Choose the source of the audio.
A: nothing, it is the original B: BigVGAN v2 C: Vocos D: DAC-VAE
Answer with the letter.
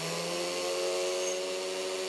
A